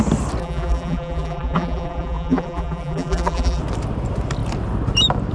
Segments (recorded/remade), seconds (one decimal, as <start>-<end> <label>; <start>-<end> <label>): 0.0-0.4 recorded; 0.4-3.6 remade; 3.6-5.3 recorded